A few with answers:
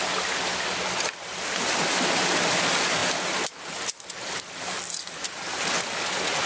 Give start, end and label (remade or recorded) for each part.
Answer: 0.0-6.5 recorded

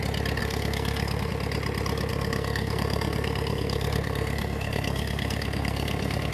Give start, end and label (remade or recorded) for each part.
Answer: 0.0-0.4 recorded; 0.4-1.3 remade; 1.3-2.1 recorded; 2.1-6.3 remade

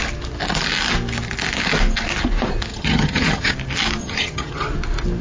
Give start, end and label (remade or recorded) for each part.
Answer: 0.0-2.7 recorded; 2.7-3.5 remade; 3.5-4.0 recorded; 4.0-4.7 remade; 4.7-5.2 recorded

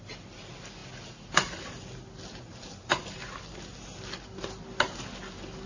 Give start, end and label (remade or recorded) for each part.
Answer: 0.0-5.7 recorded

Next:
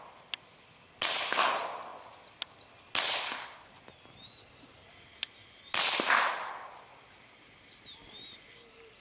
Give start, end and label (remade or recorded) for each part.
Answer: 0.0-9.0 recorded

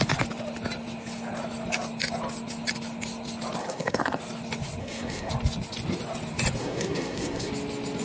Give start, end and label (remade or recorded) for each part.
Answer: 0.0-3.6 recorded; 3.6-4.2 remade; 4.2-4.8 recorded; 4.8-5.3 remade; 5.3-6.6 recorded; 6.6-7.5 remade; 7.5-8.0 recorded